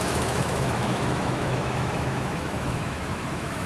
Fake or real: fake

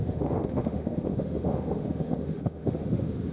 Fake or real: fake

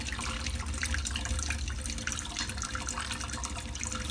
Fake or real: real